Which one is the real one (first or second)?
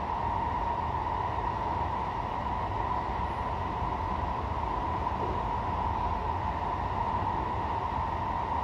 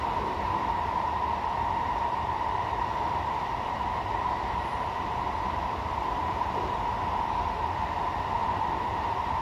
first